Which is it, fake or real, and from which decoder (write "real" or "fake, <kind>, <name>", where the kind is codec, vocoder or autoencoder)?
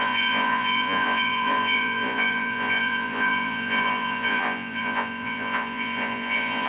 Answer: fake, vocoder, Vocos